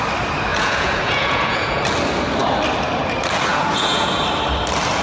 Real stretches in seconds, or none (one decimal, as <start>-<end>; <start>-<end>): 0.0-0.5; 1.8-3.5; 4.2-5.0

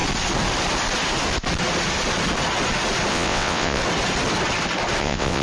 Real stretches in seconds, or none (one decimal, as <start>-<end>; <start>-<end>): 0.0-3.1; 3.8-5.0

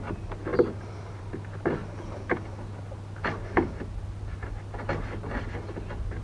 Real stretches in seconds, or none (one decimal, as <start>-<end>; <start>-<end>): 0.0-6.2

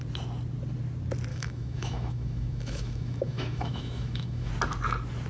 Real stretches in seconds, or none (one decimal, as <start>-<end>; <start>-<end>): 0.0-1.3; 4.5-5.3

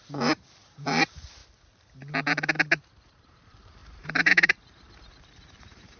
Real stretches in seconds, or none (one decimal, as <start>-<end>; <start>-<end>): 1.4-3.1

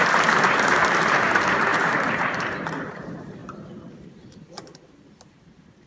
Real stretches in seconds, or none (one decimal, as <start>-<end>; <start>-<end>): none

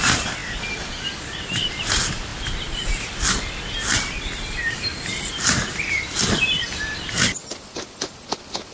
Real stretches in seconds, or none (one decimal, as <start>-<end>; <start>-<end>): 0.0-8.7

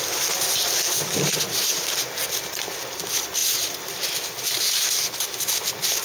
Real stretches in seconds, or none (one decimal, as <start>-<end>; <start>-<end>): 0.0-6.0